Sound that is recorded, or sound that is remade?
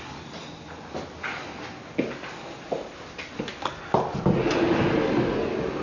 recorded